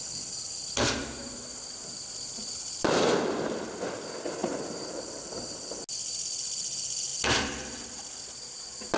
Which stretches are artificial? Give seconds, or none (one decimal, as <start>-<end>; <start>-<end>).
none